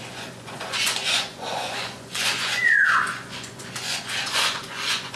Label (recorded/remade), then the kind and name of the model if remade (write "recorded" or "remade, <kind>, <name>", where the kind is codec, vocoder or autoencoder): remade, vocoder, Vocos